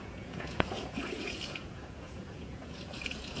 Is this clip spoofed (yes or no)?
yes